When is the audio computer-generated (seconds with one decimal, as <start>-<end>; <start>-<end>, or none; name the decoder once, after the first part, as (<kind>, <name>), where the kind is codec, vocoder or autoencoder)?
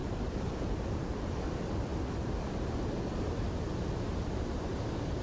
0.0-1.3 (vocoder, BigVGAN v2)